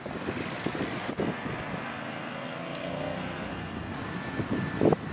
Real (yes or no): yes